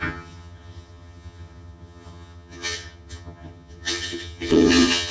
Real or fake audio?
fake